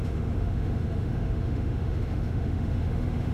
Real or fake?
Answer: fake